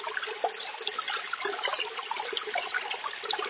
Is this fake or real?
real